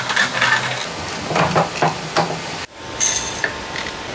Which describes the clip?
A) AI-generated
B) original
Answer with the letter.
B